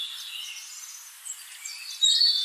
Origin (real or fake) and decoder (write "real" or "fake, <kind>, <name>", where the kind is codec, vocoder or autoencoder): real